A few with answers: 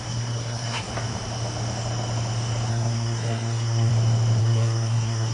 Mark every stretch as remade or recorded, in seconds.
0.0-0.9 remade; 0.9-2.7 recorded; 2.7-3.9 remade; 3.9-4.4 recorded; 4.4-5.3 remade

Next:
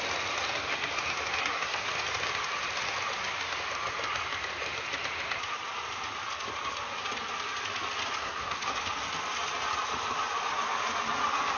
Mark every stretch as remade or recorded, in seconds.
0.0-1.4 recorded; 1.4-1.9 remade; 1.9-8.2 recorded; 8.2-8.8 remade; 8.8-11.6 recorded